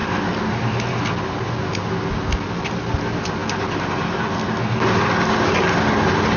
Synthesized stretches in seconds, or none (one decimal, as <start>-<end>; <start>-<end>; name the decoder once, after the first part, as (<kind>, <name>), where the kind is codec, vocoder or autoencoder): none